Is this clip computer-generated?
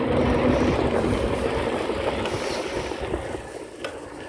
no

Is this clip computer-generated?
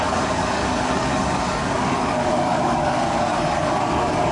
yes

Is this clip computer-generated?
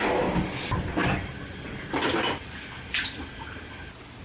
no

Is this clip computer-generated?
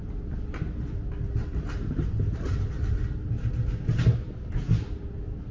no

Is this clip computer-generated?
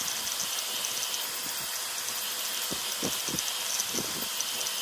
no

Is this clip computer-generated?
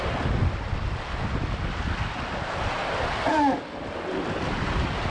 no